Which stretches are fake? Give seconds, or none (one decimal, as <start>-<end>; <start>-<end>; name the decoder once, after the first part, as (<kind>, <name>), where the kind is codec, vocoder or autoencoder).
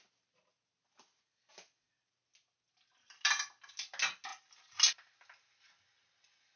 none